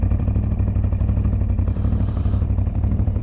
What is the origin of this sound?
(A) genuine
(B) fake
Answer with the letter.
B